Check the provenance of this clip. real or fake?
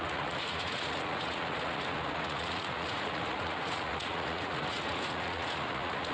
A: fake